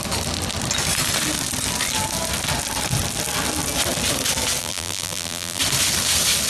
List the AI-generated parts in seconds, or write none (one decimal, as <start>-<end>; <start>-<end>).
4.6-5.6